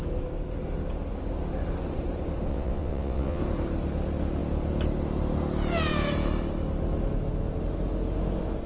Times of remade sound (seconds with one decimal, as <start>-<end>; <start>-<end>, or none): 2.5-3.4